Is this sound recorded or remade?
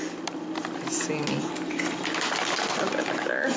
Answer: recorded